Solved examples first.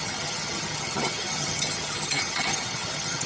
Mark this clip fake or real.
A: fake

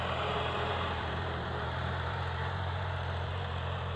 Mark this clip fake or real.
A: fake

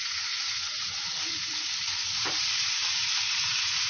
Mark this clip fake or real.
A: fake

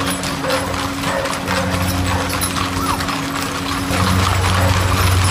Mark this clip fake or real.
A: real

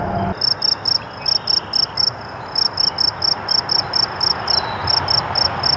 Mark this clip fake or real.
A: real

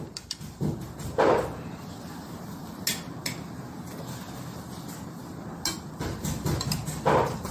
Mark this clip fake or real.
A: real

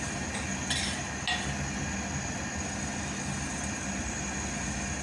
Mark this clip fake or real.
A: real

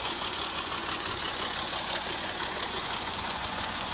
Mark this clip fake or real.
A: fake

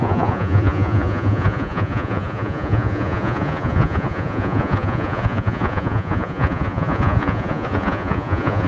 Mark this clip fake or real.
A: fake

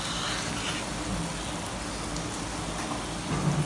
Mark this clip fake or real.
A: real